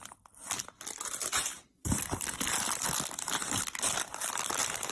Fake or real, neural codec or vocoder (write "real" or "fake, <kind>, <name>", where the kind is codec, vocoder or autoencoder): real